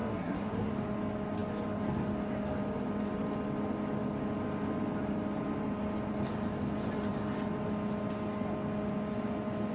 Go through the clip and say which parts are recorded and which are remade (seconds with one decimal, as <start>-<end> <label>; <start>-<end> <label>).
0.0-0.7 remade; 0.7-9.7 recorded